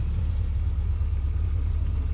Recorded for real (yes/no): yes